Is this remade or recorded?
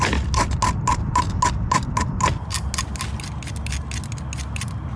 recorded